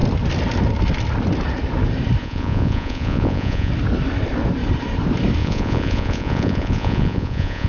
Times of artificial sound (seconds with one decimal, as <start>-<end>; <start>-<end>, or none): 2.2-3.7; 5.4-7.7